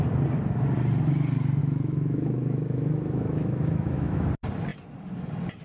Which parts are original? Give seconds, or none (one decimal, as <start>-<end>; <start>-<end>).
0.0-1.6; 4.3-5.6